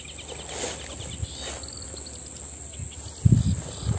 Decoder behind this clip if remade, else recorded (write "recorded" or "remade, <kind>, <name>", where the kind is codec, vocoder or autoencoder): recorded